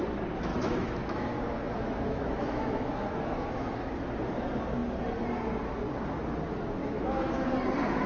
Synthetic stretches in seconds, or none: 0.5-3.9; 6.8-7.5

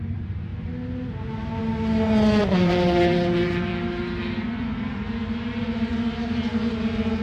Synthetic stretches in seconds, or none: 0.0-0.5; 1.2-1.6; 2.4-3.7; 4.6-5.9

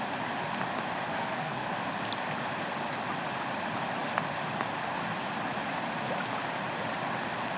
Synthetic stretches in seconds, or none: 1.1-1.7

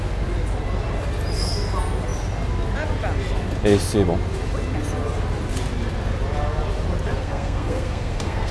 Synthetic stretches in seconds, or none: 7.1-8.5